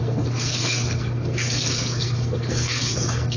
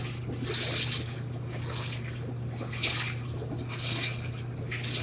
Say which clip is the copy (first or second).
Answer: first